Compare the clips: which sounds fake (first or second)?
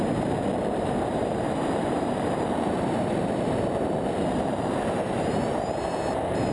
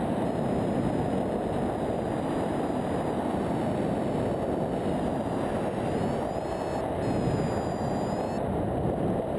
first